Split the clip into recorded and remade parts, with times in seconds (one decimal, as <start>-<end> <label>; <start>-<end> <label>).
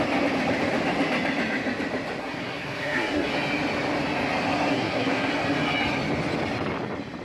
0.0-2.2 recorded; 2.2-3.3 remade; 3.3-4.7 recorded; 4.7-5.3 remade; 5.3-7.2 recorded